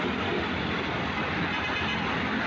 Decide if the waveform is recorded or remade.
recorded